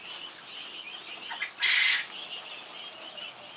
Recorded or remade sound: recorded